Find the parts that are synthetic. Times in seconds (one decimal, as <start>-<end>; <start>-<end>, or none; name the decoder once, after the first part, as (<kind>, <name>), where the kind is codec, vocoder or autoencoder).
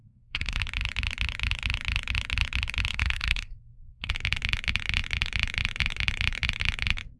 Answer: 0.0-0.6 (codec, SNAC); 2.9-4.1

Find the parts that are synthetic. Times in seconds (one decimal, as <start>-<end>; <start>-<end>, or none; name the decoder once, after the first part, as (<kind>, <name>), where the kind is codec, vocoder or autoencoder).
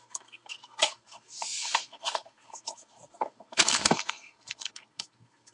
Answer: 0.0-5.5 (codec, SNAC)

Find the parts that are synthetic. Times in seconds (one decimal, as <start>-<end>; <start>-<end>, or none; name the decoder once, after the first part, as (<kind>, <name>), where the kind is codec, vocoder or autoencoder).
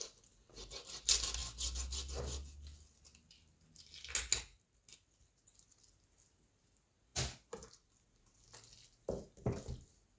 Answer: none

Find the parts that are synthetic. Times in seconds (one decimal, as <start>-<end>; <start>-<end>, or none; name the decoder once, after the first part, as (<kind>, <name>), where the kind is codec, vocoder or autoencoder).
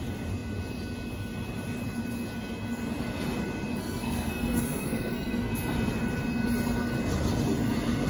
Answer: 3.8-5.5 (codec, SNAC)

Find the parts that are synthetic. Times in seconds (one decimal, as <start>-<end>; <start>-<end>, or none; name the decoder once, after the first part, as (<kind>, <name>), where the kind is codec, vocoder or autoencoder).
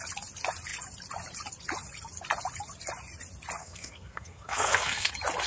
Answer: 3.6-5.1 (codec, SNAC)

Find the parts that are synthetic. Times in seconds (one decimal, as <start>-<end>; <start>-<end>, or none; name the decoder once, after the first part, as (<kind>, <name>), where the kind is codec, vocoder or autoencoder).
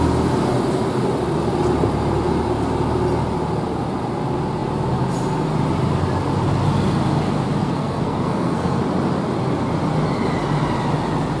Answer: 7.6-8.8 (codec, SNAC)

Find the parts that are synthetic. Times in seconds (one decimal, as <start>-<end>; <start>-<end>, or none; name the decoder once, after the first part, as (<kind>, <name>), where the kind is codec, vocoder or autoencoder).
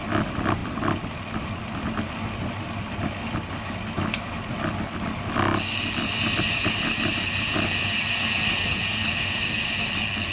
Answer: none